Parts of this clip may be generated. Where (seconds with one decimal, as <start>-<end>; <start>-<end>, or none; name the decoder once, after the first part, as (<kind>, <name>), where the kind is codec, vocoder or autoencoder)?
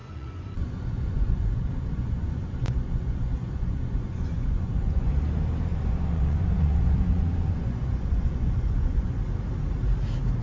0.0-5.1 (vocoder, Vocos); 5.7-9.2